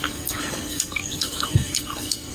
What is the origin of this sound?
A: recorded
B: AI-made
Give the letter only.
B